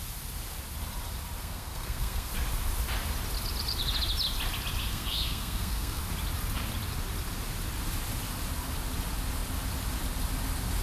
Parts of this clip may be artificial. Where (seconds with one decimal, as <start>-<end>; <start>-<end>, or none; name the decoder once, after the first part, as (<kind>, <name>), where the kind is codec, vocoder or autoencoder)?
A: 1.4-2.3 (codec, SNAC); 4.8-6.0